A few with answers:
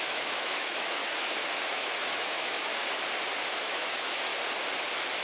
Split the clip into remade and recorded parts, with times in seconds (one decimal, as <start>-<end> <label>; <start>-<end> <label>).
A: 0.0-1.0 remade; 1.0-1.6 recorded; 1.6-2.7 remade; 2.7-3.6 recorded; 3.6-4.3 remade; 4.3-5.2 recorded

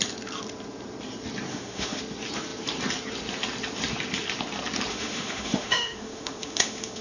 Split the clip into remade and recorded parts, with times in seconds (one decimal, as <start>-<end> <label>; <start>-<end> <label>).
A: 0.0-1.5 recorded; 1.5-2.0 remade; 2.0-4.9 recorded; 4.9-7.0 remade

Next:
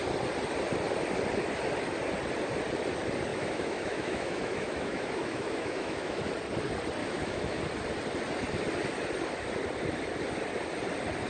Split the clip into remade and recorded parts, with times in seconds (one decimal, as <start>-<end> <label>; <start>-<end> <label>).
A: 0.0-3.3 recorded; 3.3-6.2 remade; 6.2-7.0 recorded; 7.0-7.6 remade; 7.6-11.3 recorded

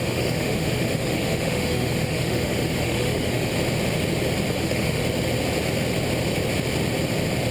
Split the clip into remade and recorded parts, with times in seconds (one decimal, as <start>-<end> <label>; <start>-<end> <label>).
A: 0.0-3.5 remade; 3.5-4.5 recorded; 4.5-5.0 remade; 5.0-7.5 recorded

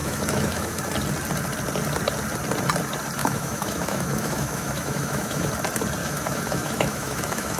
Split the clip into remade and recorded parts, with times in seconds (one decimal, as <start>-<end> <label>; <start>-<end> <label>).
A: 0.0-0.8 remade; 0.8-3.2 recorded; 3.2-5.5 remade; 5.5-6.0 recorded; 6.0-7.6 remade

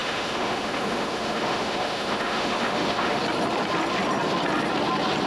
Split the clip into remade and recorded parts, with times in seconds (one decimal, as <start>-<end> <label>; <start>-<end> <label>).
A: 0.0-3.2 remade; 3.2-5.3 recorded

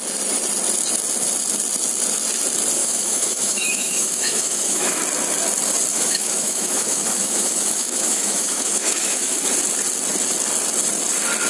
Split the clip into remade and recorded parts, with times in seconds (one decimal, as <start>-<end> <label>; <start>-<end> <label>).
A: 0.0-2.8 recorded; 2.8-5.0 remade; 5.0-5.9 recorded; 5.9-9.4 remade; 9.4-11.5 recorded

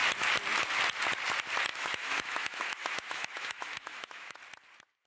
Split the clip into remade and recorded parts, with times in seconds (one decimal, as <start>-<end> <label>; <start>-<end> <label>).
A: 0.0-1.7 recorded; 1.7-4.4 remade; 4.4-5.1 recorded